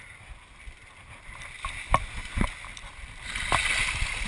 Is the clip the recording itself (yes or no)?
yes